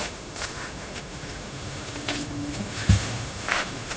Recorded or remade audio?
remade